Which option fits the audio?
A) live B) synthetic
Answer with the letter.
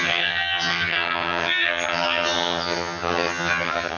B